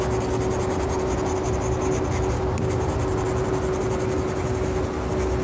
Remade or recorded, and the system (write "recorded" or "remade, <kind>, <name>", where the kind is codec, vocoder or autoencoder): recorded